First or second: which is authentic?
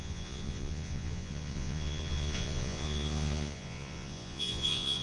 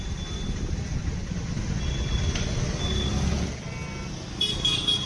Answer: second